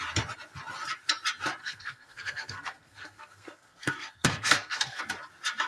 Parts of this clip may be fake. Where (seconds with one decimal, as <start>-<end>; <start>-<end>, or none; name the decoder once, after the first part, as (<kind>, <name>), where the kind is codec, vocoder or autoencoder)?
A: 1.6-5.0 (codec, SNAC)